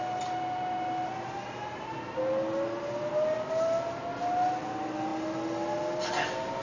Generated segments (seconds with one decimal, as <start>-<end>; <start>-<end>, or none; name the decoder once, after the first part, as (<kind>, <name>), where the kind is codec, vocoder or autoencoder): none